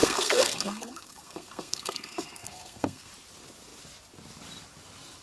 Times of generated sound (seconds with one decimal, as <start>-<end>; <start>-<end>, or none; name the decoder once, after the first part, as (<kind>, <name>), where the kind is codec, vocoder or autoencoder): 0.0-3.1 (codec, SNAC)